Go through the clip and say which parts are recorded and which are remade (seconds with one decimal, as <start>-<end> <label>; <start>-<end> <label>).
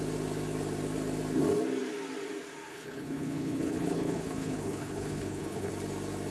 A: 0.0-2.7 recorded; 2.7-5.7 remade; 5.7-6.3 recorded